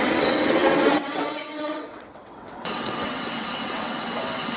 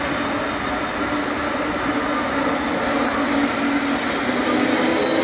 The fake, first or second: first